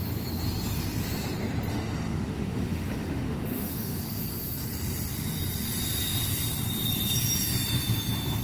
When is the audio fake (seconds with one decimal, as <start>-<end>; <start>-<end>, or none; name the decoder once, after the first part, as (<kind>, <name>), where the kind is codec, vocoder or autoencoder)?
1.7-4.0 (autoencoder, DAC-VAE)